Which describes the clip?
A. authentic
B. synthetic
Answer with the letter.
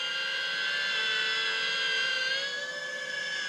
A